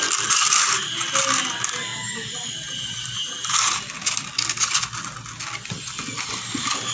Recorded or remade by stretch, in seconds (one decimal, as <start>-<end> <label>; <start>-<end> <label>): 0.0-6.9 recorded